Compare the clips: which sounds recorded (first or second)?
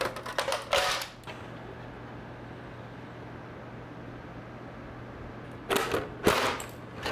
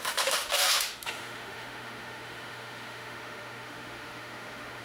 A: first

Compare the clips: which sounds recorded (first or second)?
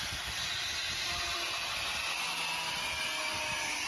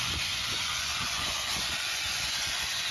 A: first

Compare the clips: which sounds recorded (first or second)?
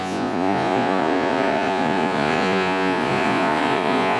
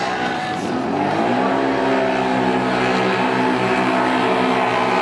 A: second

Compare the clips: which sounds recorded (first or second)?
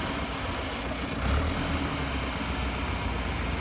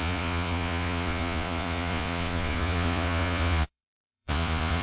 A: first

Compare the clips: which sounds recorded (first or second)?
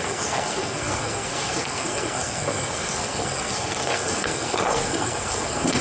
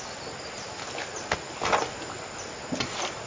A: second